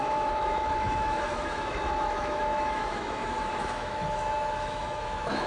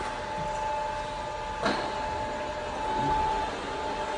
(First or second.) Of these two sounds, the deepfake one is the first